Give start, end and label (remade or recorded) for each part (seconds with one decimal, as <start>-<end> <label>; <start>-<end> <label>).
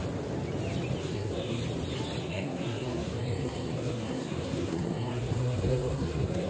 0.0-1.0 recorded; 1.0-1.6 remade; 1.6-2.2 recorded; 2.2-6.5 remade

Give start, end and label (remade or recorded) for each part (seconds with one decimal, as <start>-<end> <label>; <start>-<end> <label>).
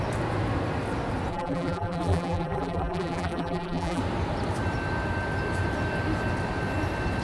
0.0-1.3 recorded; 1.3-4.0 remade; 4.0-7.2 recorded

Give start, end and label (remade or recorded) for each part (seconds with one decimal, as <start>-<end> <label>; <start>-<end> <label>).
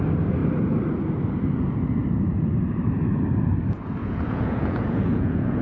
0.0-4.0 recorded; 4.0-5.6 remade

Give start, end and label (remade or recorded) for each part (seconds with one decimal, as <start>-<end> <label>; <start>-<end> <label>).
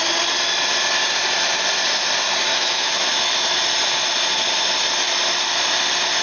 0.0-2.5 recorded; 2.5-3.3 remade; 3.3-6.2 recorded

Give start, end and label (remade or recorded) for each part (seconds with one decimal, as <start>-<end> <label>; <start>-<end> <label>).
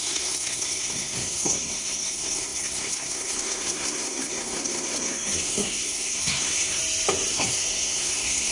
0.0-6.8 remade; 6.8-7.3 recorded; 7.3-8.5 remade